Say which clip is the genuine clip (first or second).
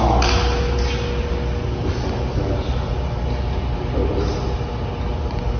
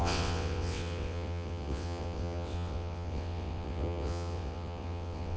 first